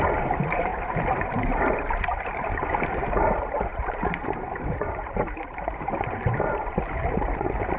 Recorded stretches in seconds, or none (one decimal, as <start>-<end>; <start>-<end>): none